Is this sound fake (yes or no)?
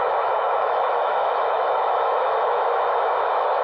yes